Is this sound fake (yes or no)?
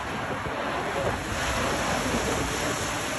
no